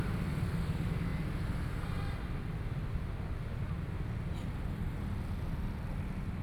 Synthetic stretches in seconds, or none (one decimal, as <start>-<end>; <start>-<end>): none